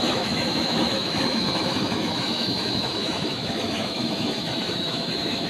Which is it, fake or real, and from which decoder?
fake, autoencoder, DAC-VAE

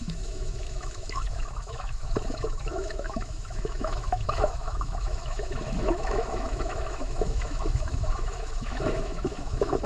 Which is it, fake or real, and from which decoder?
fake, autoencoder, DAC-VAE